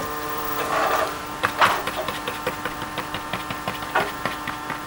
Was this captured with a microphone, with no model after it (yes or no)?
no